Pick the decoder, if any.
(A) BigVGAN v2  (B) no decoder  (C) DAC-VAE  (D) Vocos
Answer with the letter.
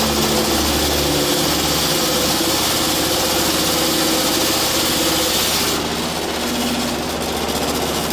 B